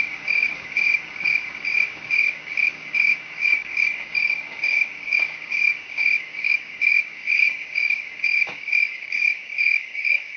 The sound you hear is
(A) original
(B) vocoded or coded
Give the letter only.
B